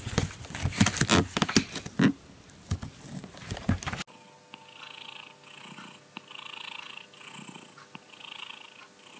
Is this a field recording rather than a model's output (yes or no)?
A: yes